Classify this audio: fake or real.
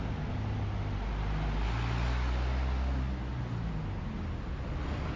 real